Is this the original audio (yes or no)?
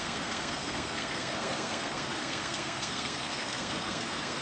no